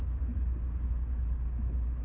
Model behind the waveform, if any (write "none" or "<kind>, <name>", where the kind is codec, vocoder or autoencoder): none